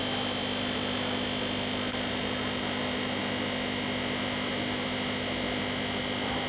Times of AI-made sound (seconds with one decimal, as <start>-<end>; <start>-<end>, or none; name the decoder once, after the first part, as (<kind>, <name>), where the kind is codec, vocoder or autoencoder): none